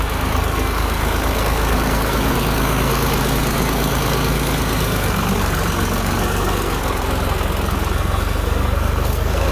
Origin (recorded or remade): remade